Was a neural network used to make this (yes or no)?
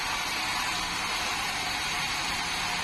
no